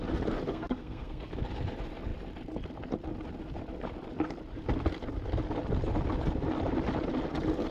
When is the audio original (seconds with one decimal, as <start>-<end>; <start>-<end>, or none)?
0.0-0.5; 1.3-7.7